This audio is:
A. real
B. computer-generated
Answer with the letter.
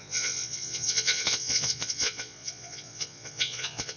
B